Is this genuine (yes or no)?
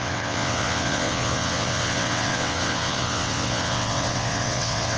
no